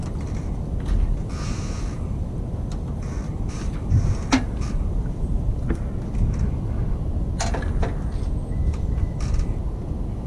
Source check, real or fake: real